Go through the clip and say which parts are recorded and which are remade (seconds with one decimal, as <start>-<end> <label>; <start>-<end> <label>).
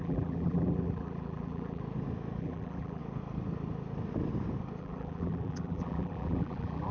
0.0-1.8 remade; 1.8-2.4 recorded; 2.4-3.0 remade; 3.0-4.8 recorded; 4.8-6.9 remade